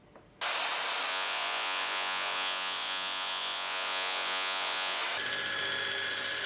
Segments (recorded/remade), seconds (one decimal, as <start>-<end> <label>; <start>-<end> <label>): 0.0-1.1 recorded; 1.1-5.0 remade; 5.0-6.5 recorded

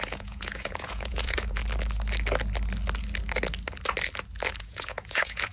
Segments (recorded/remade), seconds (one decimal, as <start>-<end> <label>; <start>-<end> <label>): 0.0-1.6 remade; 1.6-4.6 recorded; 4.6-5.5 remade

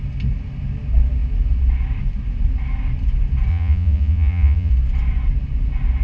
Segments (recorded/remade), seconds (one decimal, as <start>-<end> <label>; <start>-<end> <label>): 0.0-3.5 recorded; 3.5-4.7 remade; 4.7-6.0 recorded

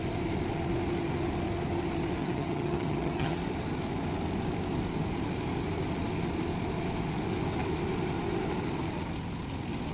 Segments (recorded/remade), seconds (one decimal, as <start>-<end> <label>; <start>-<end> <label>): 0.0-2.2 recorded; 2.2-3.4 remade; 3.4-9.9 recorded

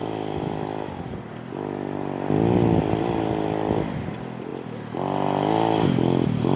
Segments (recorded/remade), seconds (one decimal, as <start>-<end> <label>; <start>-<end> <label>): 0.0-4.0 remade; 4.0-6.6 recorded